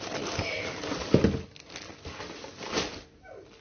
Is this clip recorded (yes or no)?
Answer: yes